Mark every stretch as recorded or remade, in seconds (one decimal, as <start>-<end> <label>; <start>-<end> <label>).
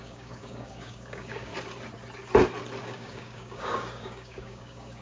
0.0-1.5 remade; 1.5-2.8 recorded; 2.8-5.0 remade